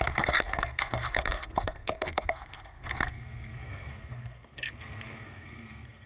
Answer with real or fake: fake